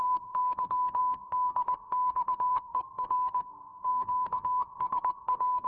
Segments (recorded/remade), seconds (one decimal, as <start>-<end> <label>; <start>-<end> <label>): 0.0-5.7 remade